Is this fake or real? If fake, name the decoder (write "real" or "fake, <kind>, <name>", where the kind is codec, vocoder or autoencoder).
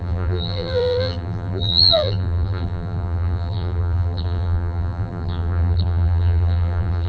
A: fake, vocoder, BigVGAN v2